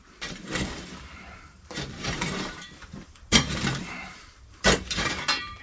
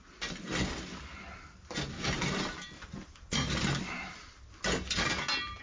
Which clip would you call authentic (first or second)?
second